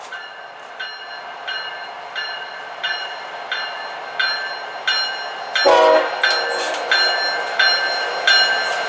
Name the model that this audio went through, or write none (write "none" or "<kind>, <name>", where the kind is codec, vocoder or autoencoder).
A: none